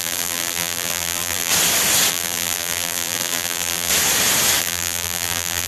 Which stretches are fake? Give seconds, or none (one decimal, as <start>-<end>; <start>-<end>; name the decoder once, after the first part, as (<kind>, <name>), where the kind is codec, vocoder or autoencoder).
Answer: 0.0-1.5 (vocoder, BigVGAN v2); 2.1-3.9; 4.6-5.7